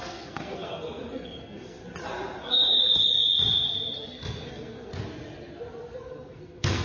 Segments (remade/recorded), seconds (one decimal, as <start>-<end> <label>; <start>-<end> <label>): 0.0-1.8 remade; 1.8-2.4 recorded; 2.4-3.1 remade; 3.1-4.0 recorded; 4.0-4.9 remade; 4.9-6.1 recorded; 6.1-6.8 remade